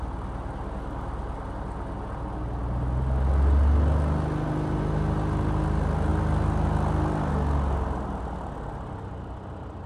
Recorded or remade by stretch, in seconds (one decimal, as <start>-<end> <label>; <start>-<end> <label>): 0.0-9.9 recorded